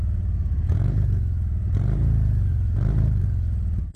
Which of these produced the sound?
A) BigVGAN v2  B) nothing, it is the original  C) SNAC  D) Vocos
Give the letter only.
A